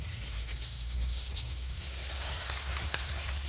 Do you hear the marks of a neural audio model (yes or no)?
yes